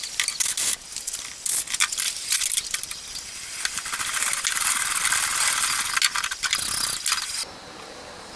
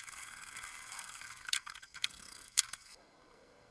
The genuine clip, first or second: first